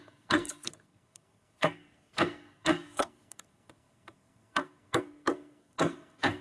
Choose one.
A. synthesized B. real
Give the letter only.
A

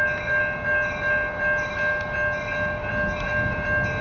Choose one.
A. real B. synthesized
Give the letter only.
A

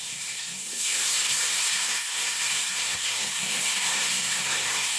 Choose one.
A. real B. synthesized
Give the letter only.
B